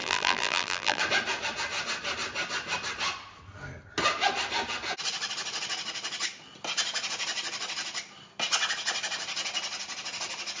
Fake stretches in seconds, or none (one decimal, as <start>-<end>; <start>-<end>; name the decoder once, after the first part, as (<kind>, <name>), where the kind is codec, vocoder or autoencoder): 0.0-1.0 (vocoder, BigVGAN v2)